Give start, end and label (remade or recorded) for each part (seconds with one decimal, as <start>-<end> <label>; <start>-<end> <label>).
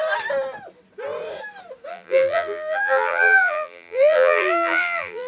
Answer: 0.0-1.9 recorded; 1.9-5.3 remade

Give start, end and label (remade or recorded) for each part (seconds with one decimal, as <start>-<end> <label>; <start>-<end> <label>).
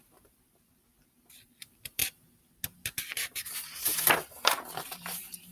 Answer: 0.0-2.0 remade; 2.0-3.0 recorded; 3.0-3.9 remade; 3.9-4.9 recorded; 4.9-5.5 remade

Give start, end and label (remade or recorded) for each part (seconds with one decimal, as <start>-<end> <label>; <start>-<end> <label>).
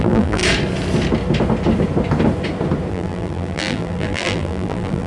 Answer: 0.0-0.4 remade; 0.4-2.9 recorded; 2.9-5.1 remade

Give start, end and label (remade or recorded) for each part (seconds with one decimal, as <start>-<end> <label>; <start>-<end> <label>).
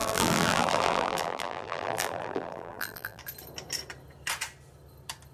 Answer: 0.0-3.2 remade; 3.2-5.3 recorded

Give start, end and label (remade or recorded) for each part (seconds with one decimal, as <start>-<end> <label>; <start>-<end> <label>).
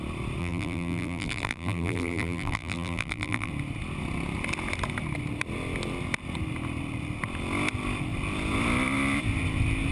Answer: 0.0-0.4 recorded; 0.4-3.5 remade; 3.5-9.9 recorded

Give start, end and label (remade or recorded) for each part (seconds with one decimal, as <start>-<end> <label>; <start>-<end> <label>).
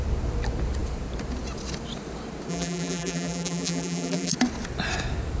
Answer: 0.0-2.5 recorded; 2.5-4.3 remade; 4.3-5.4 recorded